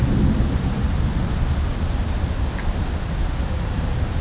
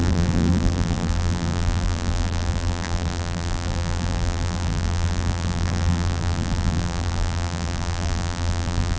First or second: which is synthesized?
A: second